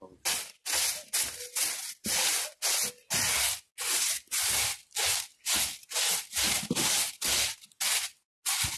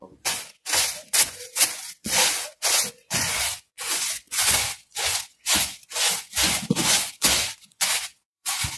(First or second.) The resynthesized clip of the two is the second